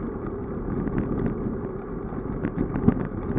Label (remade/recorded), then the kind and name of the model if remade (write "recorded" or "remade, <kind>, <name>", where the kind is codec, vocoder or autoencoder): recorded